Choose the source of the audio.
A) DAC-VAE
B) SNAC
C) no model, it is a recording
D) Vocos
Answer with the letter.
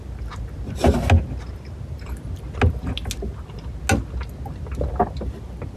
C